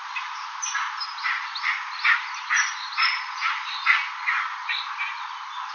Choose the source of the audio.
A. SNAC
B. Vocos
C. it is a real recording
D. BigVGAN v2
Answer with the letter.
C